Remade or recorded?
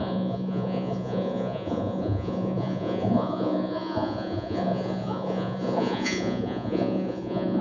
remade